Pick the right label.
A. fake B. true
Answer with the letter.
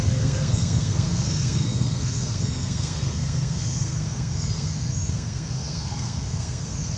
A